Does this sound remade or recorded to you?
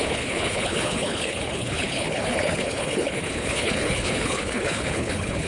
remade